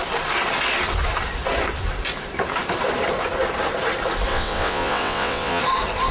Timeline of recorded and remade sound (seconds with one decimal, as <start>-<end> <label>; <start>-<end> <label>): 0.0-4.3 recorded; 4.3-5.6 remade; 5.6-6.1 recorded